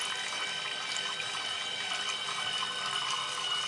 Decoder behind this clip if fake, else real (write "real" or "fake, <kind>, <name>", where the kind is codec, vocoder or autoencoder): real